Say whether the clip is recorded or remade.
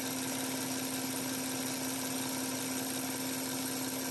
recorded